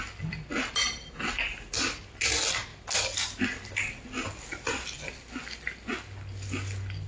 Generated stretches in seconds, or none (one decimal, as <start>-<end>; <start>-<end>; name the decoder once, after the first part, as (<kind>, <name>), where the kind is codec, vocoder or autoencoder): none